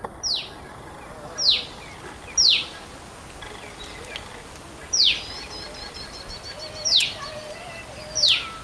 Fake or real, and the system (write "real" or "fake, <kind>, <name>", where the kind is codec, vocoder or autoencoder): real